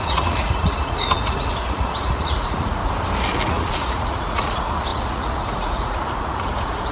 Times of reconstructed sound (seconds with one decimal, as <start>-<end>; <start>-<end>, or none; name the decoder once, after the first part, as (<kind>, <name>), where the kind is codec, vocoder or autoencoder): 0.0-2.8 (vocoder, Vocos); 3.5-6.9